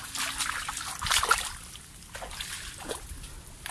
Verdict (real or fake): real